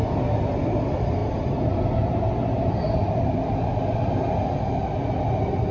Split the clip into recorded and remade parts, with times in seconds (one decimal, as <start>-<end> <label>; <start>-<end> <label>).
0.0-5.7 recorded